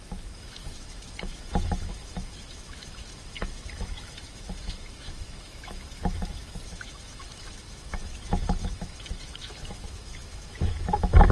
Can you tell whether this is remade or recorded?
remade